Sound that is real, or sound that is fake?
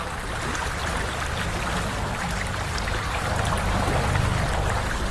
real